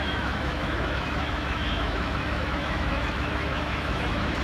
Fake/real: fake